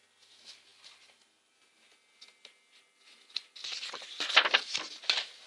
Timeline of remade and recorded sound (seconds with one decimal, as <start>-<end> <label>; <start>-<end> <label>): 0.0-5.5 recorded

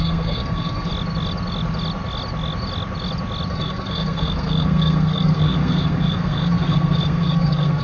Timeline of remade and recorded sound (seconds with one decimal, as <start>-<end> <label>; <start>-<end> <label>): 0.0-0.9 remade; 0.9-3.5 recorded; 3.5-7.8 remade

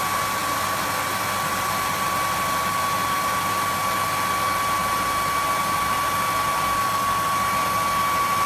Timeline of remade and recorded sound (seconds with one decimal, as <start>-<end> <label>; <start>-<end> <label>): 0.0-8.5 recorded

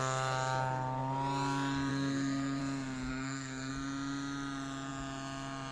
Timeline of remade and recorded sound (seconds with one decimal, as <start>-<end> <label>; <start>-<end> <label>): 0.0-1.9 recorded; 1.9-2.6 remade; 2.6-3.1 recorded; 3.1-3.7 remade; 3.7-5.7 recorded

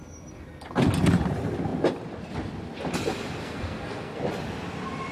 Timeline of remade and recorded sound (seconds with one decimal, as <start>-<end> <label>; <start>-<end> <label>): 0.0-3.4 recorded; 3.4-4.2 remade; 4.2-5.1 recorded